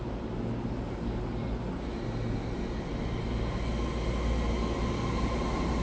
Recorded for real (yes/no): yes